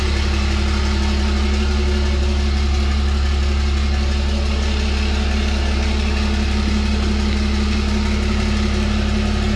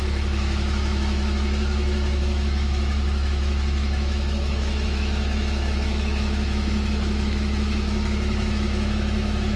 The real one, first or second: first